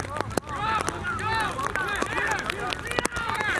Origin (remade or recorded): recorded